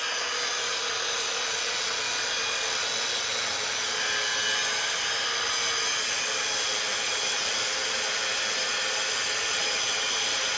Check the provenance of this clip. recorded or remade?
recorded